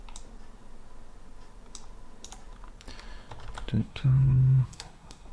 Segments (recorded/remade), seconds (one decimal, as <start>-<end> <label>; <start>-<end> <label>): 0.0-3.8 recorded; 3.8-5.3 remade